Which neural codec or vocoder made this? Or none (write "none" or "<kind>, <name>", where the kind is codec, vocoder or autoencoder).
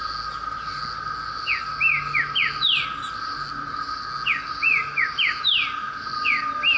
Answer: none